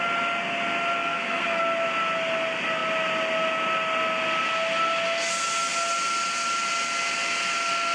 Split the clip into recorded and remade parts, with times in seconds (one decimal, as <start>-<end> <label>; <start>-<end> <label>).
0.0-1.0 recorded; 1.0-1.6 remade; 1.6-7.9 recorded